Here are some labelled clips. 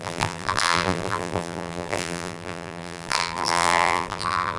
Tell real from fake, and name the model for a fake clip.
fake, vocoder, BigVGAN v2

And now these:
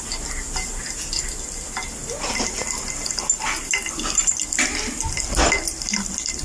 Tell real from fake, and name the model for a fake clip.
real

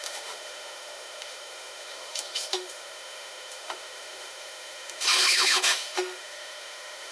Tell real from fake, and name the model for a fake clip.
fake, autoencoder, DAC-VAE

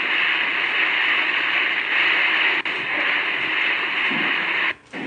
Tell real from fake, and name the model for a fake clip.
real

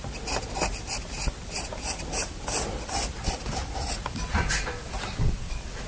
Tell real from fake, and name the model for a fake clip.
real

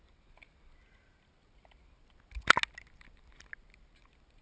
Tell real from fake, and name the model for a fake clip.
real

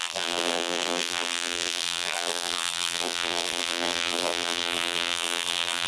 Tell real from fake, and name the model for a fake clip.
fake, vocoder, BigVGAN v2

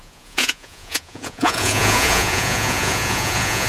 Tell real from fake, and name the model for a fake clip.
fake, vocoder, Vocos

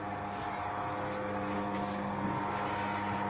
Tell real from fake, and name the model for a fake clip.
real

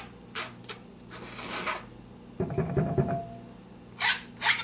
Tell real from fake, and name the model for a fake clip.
real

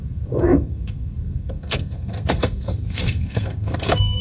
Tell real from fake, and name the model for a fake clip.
fake, codec, SNAC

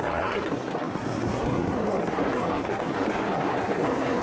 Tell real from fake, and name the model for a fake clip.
fake, codec, SNAC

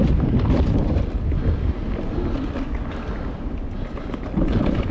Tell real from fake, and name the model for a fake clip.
real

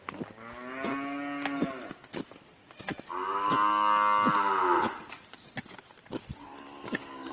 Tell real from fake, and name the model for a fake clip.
real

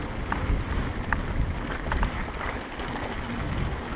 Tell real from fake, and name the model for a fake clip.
real